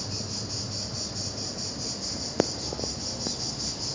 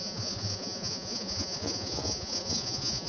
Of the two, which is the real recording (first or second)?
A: first